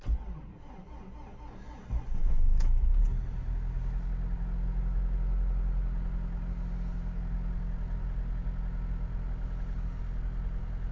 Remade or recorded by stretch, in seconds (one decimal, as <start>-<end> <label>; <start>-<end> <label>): 0.0-10.9 recorded